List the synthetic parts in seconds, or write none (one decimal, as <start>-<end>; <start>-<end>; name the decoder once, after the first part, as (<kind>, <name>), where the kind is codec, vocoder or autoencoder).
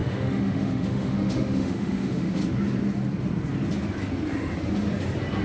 0.0-2.4 (autoencoder, DAC-VAE)